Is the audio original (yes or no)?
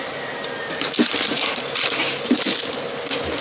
yes